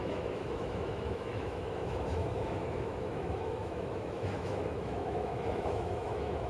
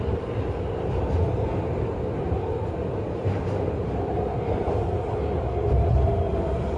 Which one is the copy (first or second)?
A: first